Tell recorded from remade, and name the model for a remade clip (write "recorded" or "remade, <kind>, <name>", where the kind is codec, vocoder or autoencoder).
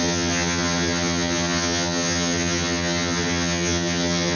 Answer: remade, vocoder, HiFi-GAN